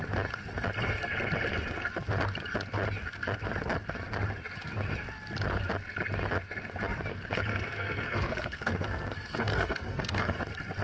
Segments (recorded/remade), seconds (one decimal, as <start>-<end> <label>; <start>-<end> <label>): 0.0-7.1 recorded; 7.1-10.4 remade; 10.4-10.8 recorded